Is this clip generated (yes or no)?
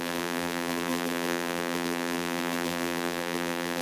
yes